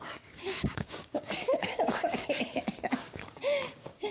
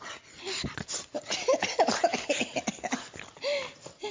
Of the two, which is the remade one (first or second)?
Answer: first